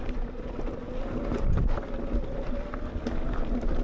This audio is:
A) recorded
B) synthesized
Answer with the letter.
A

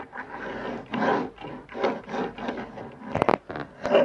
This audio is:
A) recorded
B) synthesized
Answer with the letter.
A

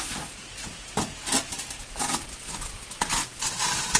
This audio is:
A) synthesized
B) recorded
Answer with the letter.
B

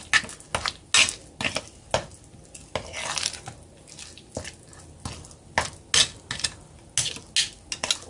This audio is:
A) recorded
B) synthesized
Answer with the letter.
A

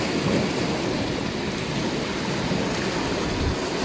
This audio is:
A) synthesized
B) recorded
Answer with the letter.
B